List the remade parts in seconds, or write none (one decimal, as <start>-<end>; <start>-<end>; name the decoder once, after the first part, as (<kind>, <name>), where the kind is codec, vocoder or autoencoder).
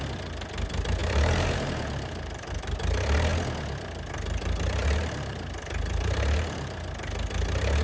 1.0-2.5 (vocoder, BigVGAN v2); 4.8-6.9